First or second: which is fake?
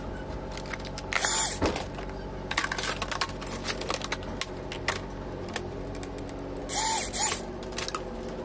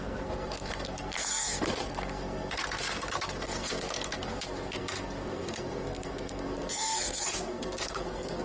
second